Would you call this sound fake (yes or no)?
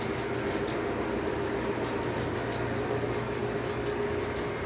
no